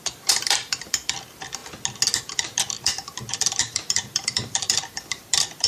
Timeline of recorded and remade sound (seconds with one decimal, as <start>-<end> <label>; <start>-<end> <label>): 0.0-1.6 remade; 1.6-2.2 recorded; 2.2-5.7 remade